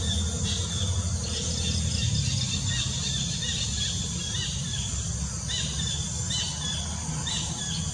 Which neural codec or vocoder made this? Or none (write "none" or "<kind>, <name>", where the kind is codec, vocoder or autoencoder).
none